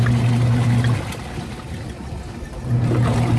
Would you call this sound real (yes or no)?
yes